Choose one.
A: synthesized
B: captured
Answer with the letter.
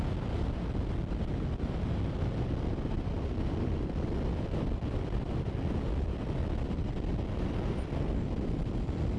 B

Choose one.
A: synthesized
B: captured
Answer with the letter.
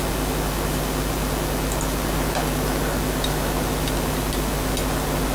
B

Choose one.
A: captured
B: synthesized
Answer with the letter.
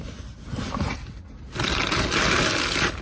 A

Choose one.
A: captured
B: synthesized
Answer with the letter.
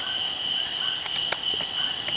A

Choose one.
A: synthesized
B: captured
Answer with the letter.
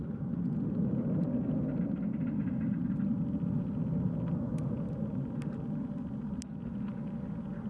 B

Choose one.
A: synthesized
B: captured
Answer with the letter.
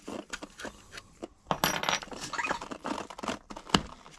B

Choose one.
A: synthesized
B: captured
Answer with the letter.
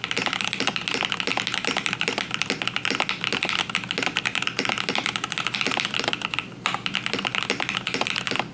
B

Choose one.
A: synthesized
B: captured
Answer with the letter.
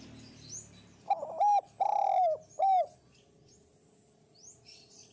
B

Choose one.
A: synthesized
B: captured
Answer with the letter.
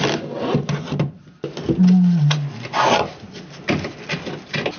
B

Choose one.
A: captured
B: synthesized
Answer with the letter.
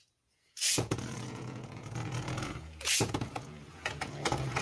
B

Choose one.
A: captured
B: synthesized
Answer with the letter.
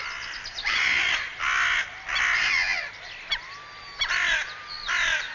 A